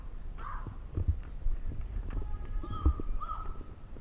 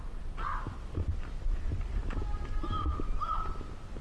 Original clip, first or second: second